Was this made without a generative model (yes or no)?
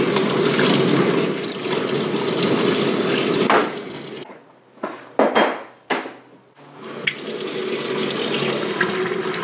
yes